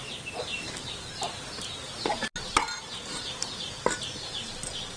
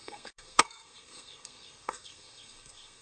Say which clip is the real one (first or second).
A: first